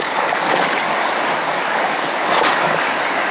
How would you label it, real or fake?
fake